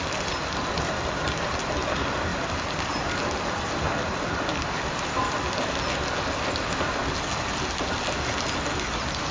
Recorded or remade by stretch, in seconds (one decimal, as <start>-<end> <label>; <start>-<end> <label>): 0.0-9.3 recorded